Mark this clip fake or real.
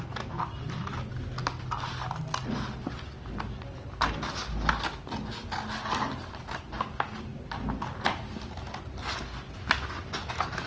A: real